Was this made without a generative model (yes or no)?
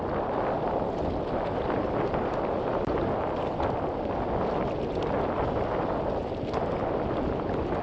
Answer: yes